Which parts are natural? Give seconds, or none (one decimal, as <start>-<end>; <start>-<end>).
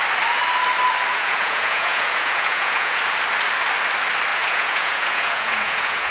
0.0-1.1; 3.0-4.3